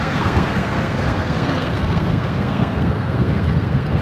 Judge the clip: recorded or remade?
remade